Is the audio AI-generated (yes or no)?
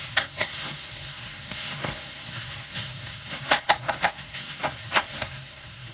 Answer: yes